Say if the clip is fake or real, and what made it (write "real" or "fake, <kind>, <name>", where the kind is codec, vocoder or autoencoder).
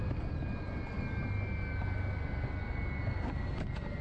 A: real